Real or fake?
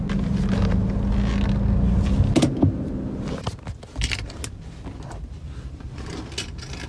real